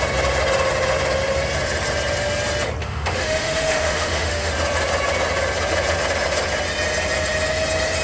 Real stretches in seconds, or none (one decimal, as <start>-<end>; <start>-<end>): 0.0-2.8; 4.5-8.0